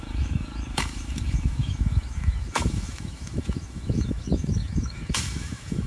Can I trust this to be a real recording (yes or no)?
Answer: no